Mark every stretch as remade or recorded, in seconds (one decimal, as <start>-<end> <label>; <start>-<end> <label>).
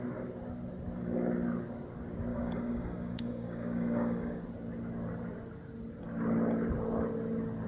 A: 0.0-2.3 recorded; 2.3-4.4 remade; 4.4-7.7 recorded